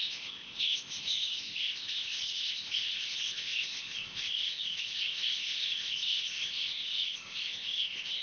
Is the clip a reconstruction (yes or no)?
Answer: yes